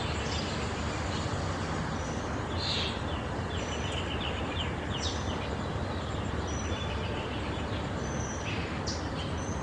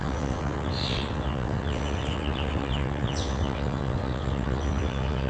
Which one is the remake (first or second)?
second